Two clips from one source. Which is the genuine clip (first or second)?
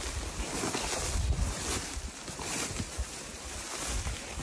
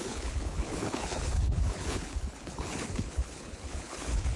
first